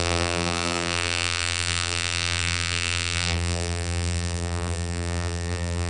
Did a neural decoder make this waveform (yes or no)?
yes